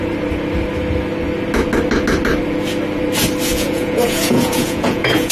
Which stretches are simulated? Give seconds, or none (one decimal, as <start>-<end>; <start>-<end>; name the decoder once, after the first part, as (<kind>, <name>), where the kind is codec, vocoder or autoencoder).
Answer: 3.5-5.3 (vocoder, Vocos)